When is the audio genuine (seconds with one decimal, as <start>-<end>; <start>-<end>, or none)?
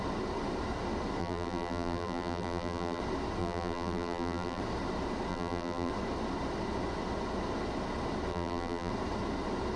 0.0-1.2; 3.0-3.4; 4.6-5.3; 5.9-8.3; 8.9-9.8